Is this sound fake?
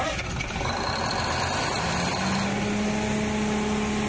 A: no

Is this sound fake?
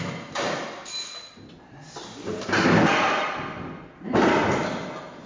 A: no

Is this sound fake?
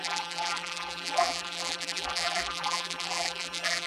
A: yes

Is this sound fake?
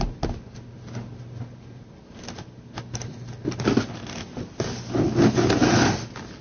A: no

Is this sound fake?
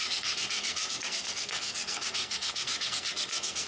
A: yes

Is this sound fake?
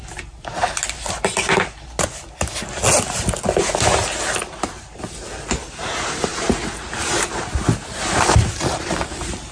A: no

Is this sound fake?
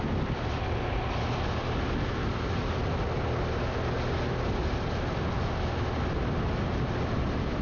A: no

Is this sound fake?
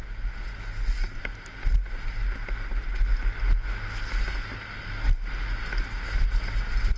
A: no